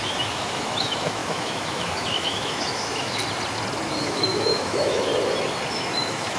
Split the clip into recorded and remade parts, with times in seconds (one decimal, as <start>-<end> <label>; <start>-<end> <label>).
0.0-3.2 remade; 3.2-4.0 recorded; 4.0-5.1 remade; 5.1-5.7 recorded; 5.7-6.4 remade